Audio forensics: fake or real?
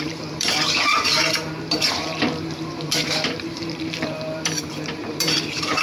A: fake